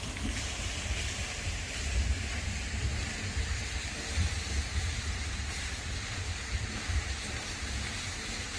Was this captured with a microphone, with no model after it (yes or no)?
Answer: yes